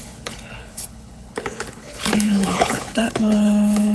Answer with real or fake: fake